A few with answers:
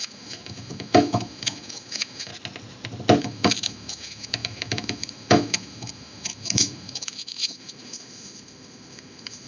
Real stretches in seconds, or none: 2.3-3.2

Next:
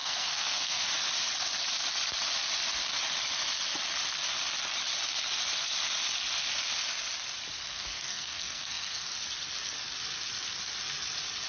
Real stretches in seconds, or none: 0.9-7.7; 9.1-11.5

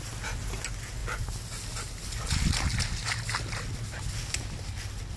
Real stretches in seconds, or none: 0.0-5.2

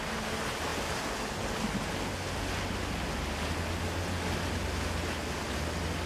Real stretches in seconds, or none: 0.0-6.1

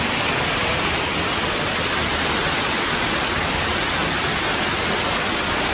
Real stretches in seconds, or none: 0.0-5.7

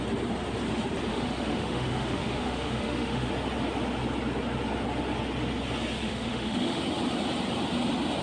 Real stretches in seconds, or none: 0.0-1.1; 3.3-6.0; 6.8-8.2

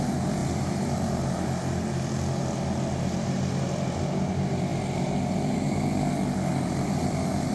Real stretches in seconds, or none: 0.0-7.5

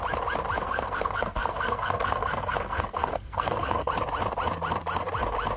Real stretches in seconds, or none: 0.0-0.6; 3.9-5.6